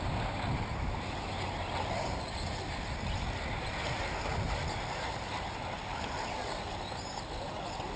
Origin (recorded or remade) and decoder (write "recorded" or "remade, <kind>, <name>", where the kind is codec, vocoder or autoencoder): recorded